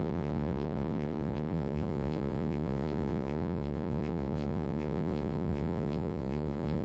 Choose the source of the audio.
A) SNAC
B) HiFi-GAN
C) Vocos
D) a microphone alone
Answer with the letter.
C